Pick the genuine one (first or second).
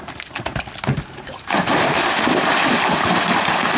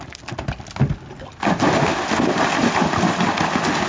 second